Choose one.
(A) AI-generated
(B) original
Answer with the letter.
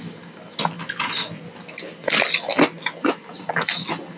B